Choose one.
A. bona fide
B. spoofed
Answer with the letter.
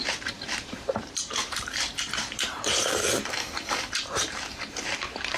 B